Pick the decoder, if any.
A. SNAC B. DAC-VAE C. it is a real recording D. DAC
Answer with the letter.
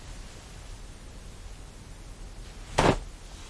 C